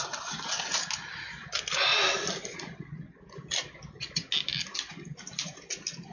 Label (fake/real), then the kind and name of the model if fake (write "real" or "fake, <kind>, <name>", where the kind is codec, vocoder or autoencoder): real